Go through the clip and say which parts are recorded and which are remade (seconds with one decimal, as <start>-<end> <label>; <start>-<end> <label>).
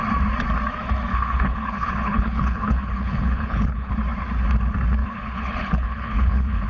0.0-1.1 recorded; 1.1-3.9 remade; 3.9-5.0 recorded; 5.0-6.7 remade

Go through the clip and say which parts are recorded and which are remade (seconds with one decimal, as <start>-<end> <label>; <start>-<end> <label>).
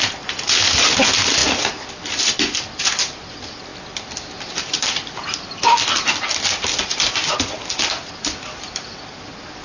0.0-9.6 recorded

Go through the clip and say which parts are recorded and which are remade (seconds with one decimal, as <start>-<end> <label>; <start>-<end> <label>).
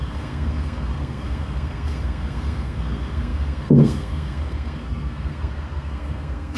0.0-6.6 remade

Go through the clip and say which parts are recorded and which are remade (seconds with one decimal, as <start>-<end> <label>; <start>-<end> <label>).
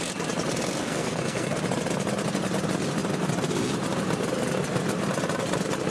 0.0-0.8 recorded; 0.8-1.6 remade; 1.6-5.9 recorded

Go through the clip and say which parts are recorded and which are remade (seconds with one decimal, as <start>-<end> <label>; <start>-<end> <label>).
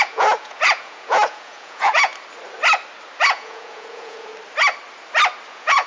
0.0-2.1 remade; 2.1-3.2 recorded; 3.2-4.3 remade; 4.3-5.5 recorded; 5.5-5.9 remade